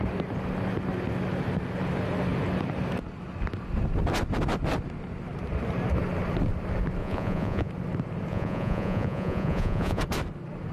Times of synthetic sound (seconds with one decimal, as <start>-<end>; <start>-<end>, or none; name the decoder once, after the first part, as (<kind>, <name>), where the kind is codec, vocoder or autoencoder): 7.0-7.7 (vocoder, Vocos); 8.3-10.0